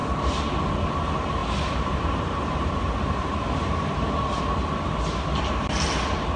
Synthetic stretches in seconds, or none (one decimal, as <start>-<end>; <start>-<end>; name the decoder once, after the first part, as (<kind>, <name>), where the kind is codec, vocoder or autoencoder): 1.4-4.4 (vocoder, BigVGAN v2)